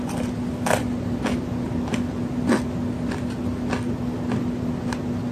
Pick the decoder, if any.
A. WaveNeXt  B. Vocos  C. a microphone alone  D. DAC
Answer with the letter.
C